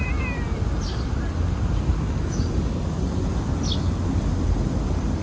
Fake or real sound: real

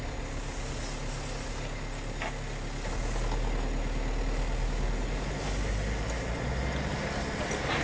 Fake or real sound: real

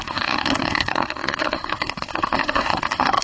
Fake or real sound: fake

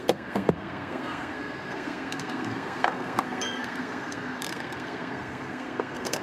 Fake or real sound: fake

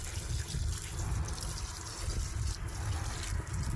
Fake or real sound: real